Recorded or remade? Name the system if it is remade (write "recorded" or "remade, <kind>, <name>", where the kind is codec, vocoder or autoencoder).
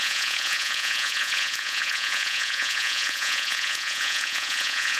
remade, vocoder, Vocos